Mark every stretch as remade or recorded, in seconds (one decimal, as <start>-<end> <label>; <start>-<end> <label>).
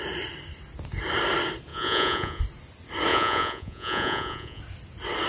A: 0.0-1.7 recorded; 1.7-2.4 remade; 2.4-3.1 recorded; 3.1-4.6 remade; 4.6-5.3 recorded